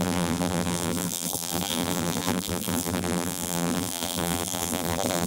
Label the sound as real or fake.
fake